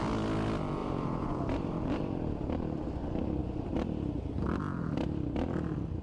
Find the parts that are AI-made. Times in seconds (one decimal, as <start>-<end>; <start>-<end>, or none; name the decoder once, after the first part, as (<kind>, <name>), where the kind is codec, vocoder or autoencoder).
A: 0.8-2.0 (vocoder, BigVGAN v2); 3.4-4.3